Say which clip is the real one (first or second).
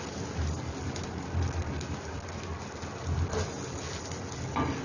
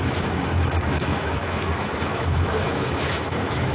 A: first